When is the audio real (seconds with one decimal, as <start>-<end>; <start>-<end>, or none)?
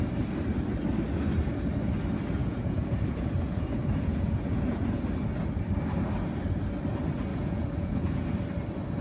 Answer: 0.0-2.4; 5.0-7.3; 8.3-9.0